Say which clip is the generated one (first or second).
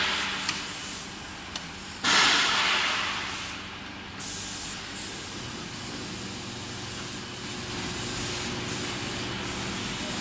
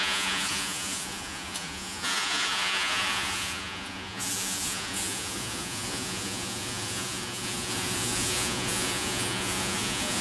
second